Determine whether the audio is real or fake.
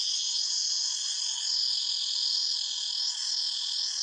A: real